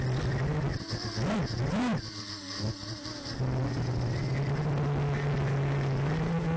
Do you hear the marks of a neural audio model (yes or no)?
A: no